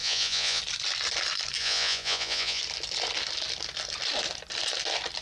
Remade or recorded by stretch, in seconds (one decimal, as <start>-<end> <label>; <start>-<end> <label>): 0.0-0.6 remade; 0.6-1.6 recorded; 1.6-2.6 remade; 2.6-5.2 recorded